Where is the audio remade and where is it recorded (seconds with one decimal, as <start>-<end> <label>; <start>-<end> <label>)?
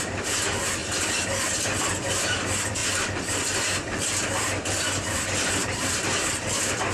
0.0-2.8 remade; 2.8-5.5 recorded; 5.5-6.9 remade